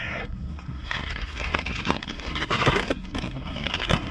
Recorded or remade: remade